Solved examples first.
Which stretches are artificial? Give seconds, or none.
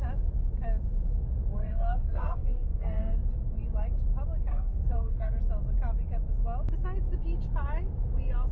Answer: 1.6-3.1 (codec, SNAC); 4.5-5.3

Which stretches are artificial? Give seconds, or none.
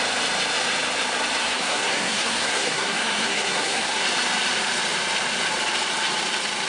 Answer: 1.4-4.0 (codec, SNAC)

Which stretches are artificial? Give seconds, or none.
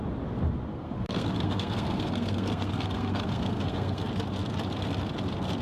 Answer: 0.7-4.1 (codec, SNAC)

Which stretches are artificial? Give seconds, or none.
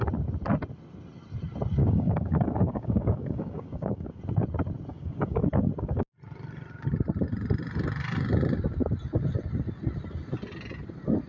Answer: 1.8-4.2 (codec, DAC); 4.9-5.5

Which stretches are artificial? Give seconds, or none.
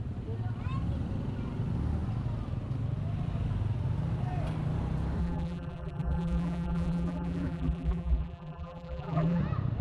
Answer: 5.2-9.4 (vocoder, BigVGAN v2)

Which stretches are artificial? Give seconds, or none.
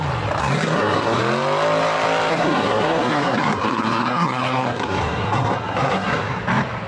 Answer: 0.4-1.2 (codec, SNAC); 2.3-6.4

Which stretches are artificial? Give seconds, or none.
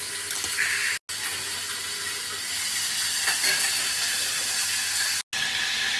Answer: none